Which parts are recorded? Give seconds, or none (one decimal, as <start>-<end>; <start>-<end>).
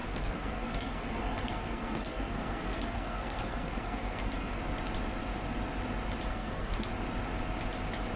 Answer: 4.6-6.3; 6.9-8.2